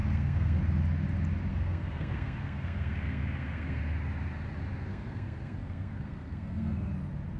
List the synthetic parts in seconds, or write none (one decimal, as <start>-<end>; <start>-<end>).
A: 0.0-0.6; 1.5-3.8; 4.9-6.9